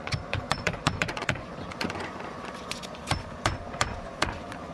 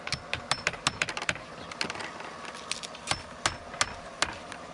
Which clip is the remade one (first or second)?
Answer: first